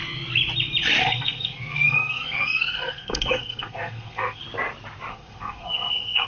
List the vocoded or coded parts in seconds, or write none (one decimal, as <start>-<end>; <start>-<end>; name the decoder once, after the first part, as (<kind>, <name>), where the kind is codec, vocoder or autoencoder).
1.0-4.4 (codec, SNAC); 5.1-6.3